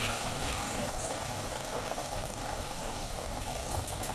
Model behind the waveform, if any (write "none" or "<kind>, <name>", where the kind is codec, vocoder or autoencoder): codec, DAC